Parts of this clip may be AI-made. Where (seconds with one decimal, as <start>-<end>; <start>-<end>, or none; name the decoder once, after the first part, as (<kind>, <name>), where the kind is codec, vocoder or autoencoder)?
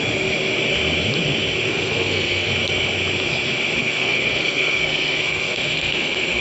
1.7-2.5 (codec, SNAC); 3.8-6.4